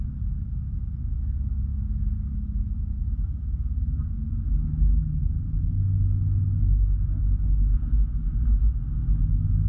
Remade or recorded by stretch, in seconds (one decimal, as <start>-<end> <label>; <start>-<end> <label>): 0.0-9.7 recorded